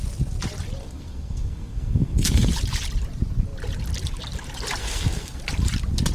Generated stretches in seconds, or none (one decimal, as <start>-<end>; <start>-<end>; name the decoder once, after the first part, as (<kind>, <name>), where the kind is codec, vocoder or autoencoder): 0.8-2.5 (codec, SNAC); 4.8-5.4